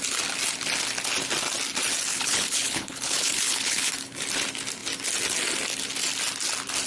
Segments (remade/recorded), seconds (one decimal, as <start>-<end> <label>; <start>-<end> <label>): 0.0-2.1 recorded; 2.1-3.9 remade; 3.9-6.9 recorded